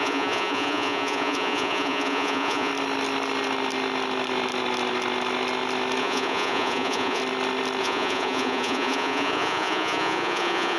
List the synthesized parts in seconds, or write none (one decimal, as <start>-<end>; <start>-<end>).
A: 0.0-2.7; 6.0-7.2; 7.8-10.8